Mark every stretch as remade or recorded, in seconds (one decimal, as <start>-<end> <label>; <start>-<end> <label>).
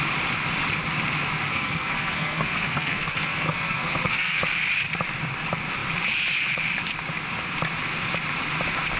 0.0-1.5 recorded; 1.5-4.4 remade; 4.4-9.0 recorded